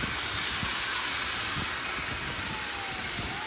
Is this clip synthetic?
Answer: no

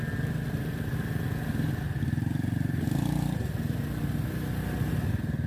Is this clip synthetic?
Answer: no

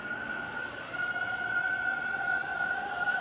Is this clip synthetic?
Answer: no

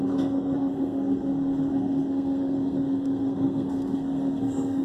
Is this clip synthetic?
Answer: yes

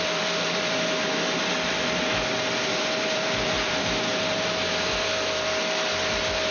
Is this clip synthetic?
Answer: yes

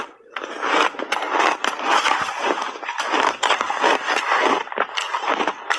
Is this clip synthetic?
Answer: no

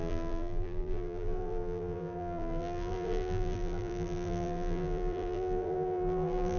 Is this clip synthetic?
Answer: yes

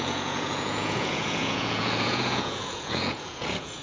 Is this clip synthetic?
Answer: yes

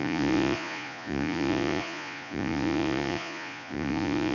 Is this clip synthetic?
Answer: yes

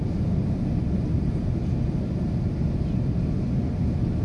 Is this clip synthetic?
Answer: no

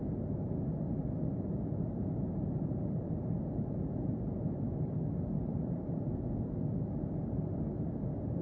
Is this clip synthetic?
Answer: no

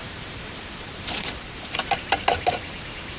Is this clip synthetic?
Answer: yes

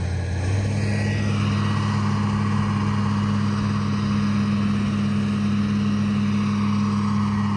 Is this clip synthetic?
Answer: no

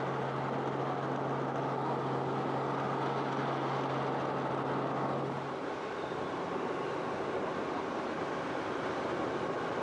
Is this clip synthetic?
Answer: no